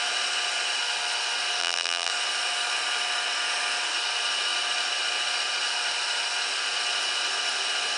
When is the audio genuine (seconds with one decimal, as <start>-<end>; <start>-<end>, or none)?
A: 0.0-1.6; 2.1-8.0